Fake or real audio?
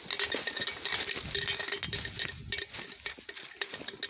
real